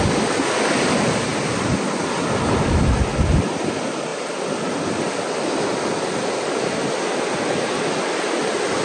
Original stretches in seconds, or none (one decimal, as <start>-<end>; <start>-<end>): 0.0-8.8